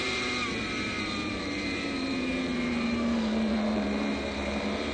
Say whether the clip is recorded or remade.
remade